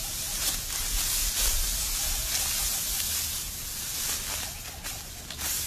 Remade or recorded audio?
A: recorded